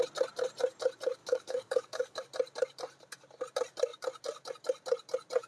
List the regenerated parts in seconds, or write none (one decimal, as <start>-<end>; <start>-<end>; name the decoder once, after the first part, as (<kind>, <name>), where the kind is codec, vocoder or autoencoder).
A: 1.2-2.2 (codec, DAC)